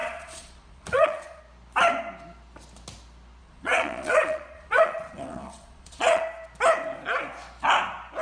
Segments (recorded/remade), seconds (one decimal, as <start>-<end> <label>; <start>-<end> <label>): 0.0-1.4 remade; 1.4-3.4 recorded; 3.4-6.2 remade; 6.2-8.2 recorded

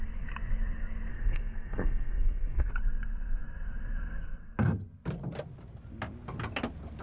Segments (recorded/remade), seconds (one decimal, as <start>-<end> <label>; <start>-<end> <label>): 0.0-1.1 recorded; 1.1-2.7 remade; 2.7-7.0 recorded

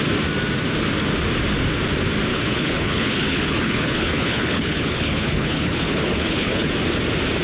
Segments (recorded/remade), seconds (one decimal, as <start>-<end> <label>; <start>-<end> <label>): 0.0-2.3 recorded; 2.3-6.7 remade; 6.7-7.4 recorded

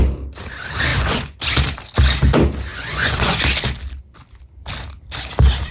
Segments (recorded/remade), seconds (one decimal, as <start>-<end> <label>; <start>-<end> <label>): 0.0-0.9 recorded; 0.9-1.4 remade; 1.4-2.7 recorded; 2.7-3.4 remade; 3.4-5.7 recorded